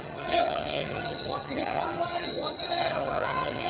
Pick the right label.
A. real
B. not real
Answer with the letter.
B